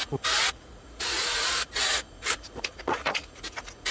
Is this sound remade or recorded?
remade